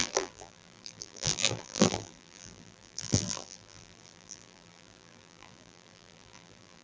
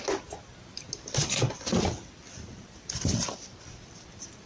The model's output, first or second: first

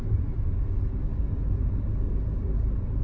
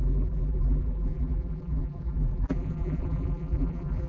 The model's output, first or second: second